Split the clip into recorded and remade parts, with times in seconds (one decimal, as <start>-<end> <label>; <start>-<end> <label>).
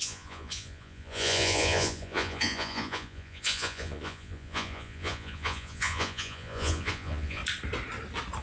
0.0-7.4 remade; 7.4-8.4 recorded